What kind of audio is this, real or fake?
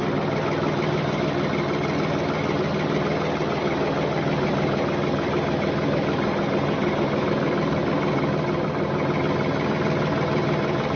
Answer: real